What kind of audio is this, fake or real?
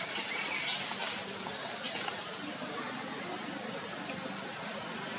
real